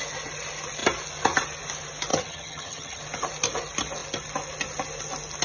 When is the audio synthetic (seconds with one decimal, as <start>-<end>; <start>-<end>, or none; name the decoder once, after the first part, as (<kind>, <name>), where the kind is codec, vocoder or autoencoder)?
2.1-3.0 (vocoder, HiFi-GAN)